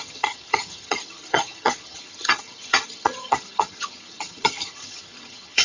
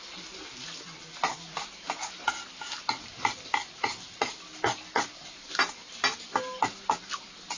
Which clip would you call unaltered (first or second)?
second